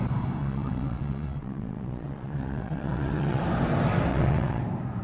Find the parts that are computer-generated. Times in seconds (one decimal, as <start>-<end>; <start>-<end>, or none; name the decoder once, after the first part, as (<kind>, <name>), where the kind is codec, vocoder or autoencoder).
0.4-3.4 (vocoder, WaveNeXt); 4.1-4.6